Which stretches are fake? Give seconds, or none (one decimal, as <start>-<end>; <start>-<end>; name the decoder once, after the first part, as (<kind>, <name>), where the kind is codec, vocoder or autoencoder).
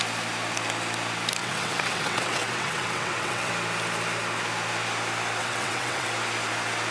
1.4-3.5 (vocoder, WaveNeXt); 5.4-6.1